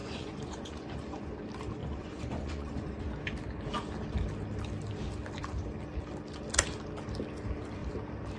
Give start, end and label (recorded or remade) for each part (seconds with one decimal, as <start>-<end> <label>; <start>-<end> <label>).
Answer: 0.0-1.3 remade; 1.3-1.8 recorded; 1.8-3.0 remade; 3.0-8.4 recorded